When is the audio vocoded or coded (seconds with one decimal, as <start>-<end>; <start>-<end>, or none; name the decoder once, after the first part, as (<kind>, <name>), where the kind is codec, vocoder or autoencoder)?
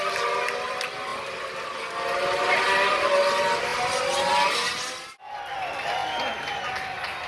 none